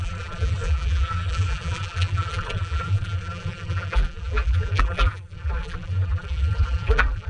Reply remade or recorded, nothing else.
remade